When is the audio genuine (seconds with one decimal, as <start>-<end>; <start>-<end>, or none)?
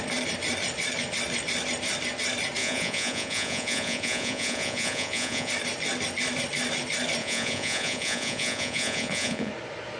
0.0-2.6; 5.5-7.2; 9.5-10.0